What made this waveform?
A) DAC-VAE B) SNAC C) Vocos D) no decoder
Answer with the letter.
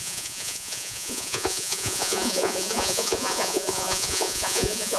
C